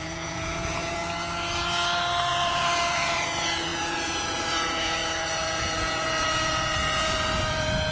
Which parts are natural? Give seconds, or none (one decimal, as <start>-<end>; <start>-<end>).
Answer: 1.0-2.3